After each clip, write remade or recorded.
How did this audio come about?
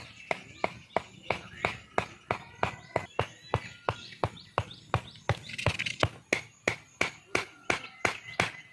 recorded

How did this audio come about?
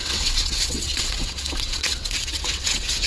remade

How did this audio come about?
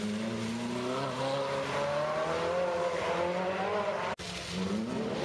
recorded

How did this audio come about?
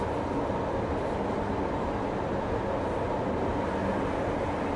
recorded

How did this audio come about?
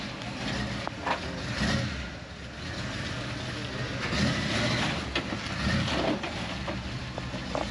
recorded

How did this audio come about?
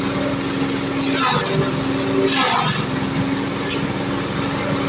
recorded